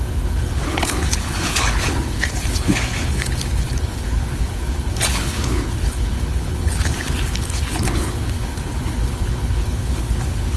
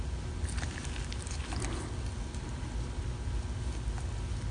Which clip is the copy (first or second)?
first